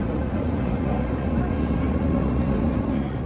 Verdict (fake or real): fake